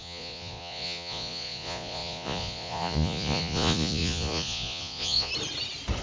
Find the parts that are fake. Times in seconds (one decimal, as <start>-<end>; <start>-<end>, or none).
0.0-5.3